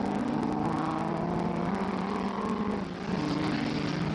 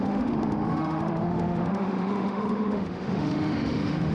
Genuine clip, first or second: first